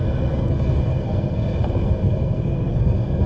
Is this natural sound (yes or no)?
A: no